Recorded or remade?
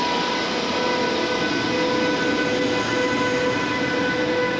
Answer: recorded